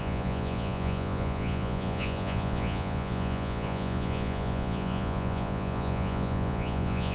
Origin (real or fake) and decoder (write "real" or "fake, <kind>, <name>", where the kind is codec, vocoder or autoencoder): fake, vocoder, Vocos